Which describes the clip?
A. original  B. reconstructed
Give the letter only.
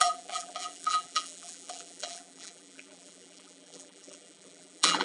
B